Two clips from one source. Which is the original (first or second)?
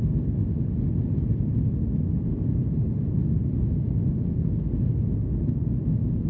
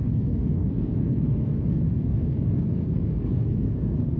first